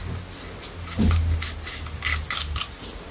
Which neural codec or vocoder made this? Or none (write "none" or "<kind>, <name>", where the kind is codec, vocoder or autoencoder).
none